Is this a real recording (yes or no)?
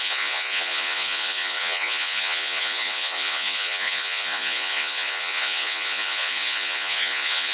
no